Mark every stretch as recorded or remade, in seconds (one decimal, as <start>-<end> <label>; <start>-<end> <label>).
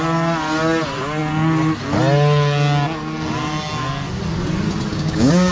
0.0-4.9 recorded; 4.9-5.5 remade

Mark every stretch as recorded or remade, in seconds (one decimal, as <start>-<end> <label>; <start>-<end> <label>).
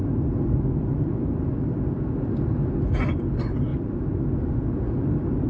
0.0-5.5 recorded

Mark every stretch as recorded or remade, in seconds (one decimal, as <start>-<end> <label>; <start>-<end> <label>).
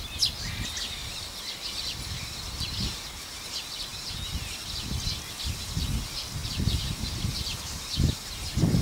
0.0-8.8 recorded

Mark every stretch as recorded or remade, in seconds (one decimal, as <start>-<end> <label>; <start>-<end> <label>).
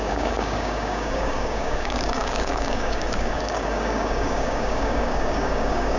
0.0-6.0 remade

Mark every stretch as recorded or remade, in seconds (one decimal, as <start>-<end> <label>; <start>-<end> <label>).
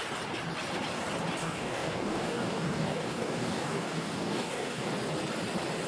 0.0-1.4 recorded; 1.4-4.9 remade; 4.9-5.9 recorded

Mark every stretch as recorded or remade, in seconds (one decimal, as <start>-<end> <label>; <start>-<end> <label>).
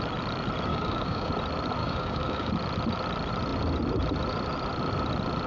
0.0-0.7 recorded; 0.7-1.3 remade; 1.3-1.8 recorded; 1.8-2.5 remade; 2.5-5.5 recorded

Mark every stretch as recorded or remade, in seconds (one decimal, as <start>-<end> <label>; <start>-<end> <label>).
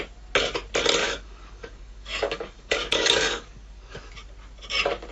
0.0-1.0 recorded; 1.0-4.1 remade; 4.1-5.1 recorded